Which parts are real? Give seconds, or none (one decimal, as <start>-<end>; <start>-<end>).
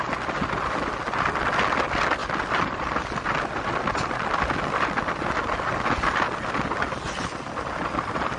0.0-8.4